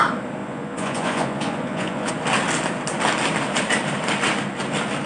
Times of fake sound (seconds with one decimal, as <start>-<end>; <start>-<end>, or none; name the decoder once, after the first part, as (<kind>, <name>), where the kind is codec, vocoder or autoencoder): 0.4-2.1 (vocoder, Vocos)